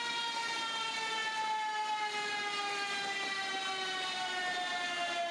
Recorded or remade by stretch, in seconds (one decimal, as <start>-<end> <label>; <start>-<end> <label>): 0.0-5.3 recorded